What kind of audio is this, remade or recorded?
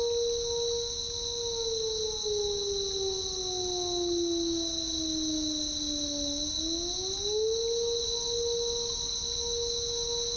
recorded